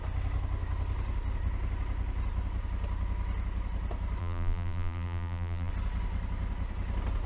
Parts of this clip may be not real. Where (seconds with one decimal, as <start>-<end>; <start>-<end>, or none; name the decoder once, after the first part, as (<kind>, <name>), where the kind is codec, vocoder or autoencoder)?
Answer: 4.2-5.7 (vocoder, BigVGAN v2)